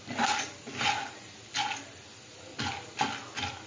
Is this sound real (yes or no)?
yes